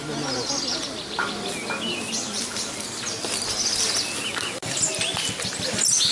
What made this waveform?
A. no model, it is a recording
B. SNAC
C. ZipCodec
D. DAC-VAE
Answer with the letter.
A